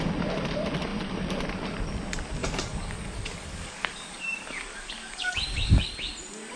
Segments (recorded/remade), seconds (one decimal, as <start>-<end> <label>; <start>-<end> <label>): 0.0-2.4 recorded; 2.4-6.1 remade; 6.1-6.6 recorded